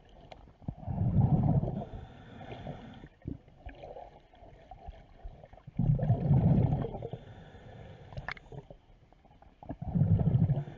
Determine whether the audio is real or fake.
real